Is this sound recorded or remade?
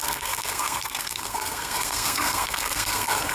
remade